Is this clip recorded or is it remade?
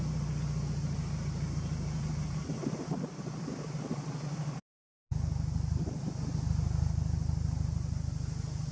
recorded